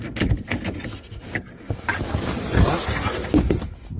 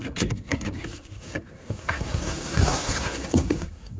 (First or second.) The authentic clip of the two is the first